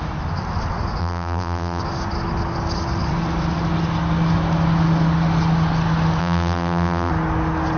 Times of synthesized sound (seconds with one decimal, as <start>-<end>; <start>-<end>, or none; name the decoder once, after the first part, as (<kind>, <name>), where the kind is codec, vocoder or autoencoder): 1.0-1.8 (vocoder, BigVGAN v2); 6.2-7.1